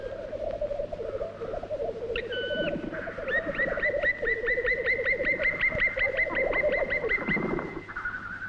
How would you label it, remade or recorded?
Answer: recorded